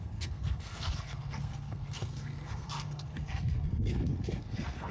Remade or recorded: remade